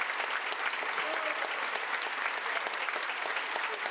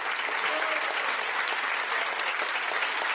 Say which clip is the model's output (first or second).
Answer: first